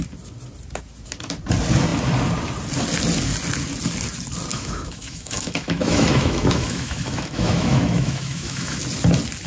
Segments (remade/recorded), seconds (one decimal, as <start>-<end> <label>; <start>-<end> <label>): 0.0-4.5 recorded; 4.5-8.8 remade; 8.8-9.5 recorded